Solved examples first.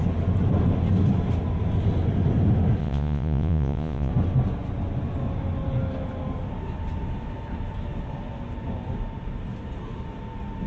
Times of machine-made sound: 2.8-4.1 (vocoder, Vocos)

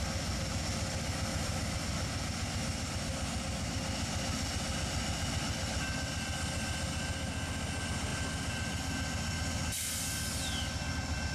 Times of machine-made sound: none

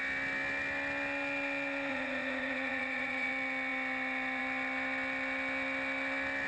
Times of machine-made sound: 1.9-3.3 (vocoder, Vocos)